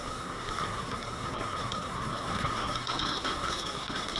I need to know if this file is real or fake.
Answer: fake